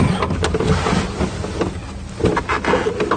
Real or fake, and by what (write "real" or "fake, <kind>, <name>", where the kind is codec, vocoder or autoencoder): real